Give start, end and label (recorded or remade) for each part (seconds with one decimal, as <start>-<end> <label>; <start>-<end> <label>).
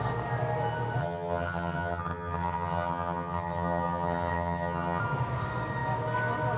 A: 0.0-1.0 recorded; 1.0-5.0 remade; 5.0-6.6 recorded